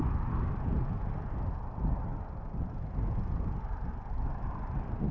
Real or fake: real